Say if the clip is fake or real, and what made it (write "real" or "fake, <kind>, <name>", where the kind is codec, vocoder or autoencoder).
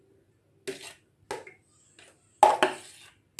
real